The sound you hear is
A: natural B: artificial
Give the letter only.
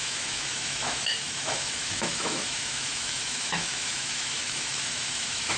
B